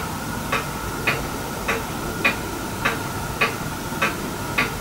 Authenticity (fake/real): real